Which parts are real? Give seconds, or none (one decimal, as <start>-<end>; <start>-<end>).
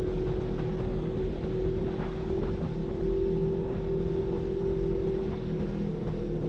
0.0-6.5